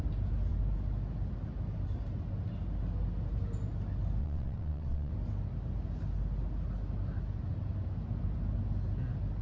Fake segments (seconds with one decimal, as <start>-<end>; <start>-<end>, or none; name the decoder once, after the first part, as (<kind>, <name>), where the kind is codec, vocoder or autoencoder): 4.2-5.1 (vocoder, WaveNeXt)